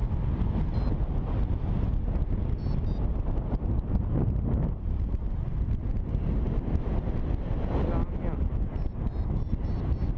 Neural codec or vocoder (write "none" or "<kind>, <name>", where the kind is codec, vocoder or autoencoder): none